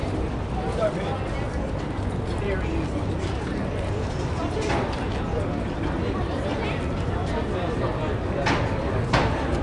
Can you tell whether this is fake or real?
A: real